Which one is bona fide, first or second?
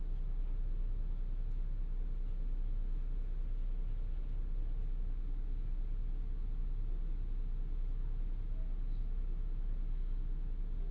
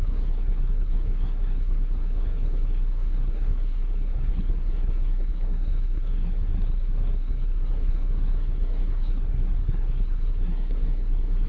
first